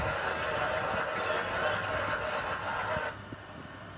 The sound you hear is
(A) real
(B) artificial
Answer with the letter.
A